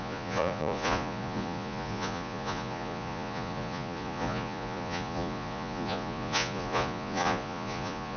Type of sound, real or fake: fake